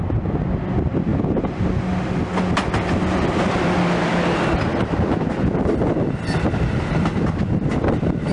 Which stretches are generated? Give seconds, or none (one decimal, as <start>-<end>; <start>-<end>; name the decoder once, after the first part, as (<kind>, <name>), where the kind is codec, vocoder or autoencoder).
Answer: none